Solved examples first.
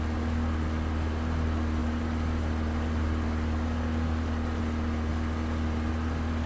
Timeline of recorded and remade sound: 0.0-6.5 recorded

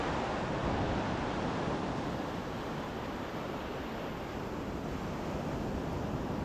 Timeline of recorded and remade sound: 0.0-6.4 recorded

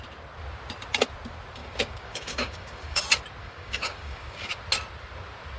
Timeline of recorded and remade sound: 0.0-1.6 recorded; 1.6-3.0 remade; 3.0-3.4 recorded; 3.4-4.5 remade; 4.5-5.6 recorded

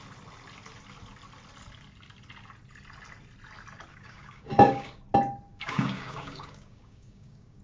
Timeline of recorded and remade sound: 0.0-3.9 recorded; 3.9-5.0 remade; 5.0-5.5 recorded; 5.5-7.6 remade

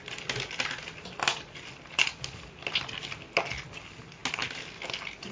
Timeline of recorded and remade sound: 0.0-5.3 recorded

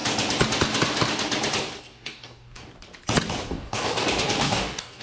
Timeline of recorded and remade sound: 0.0-1.8 recorded; 1.8-2.7 remade; 2.7-3.5 recorded; 3.5-5.0 remade

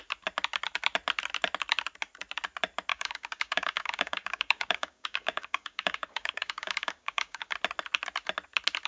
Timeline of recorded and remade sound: 0.0-2.9 recorded; 2.9-7.5 remade; 7.5-8.9 recorded

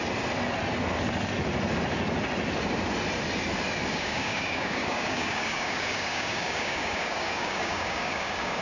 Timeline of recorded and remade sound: 0.0-3.9 recorded; 3.9-8.6 remade